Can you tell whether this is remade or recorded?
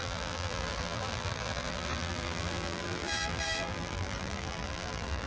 remade